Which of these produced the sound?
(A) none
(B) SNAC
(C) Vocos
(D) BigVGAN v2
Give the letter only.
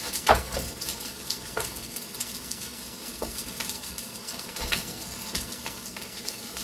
B